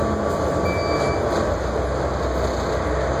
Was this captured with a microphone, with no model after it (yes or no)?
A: yes